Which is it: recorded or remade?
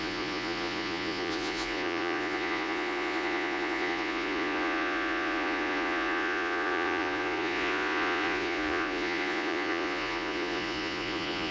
remade